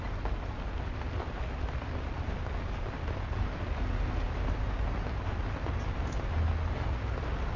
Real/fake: real